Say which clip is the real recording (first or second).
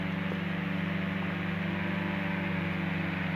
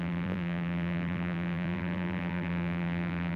first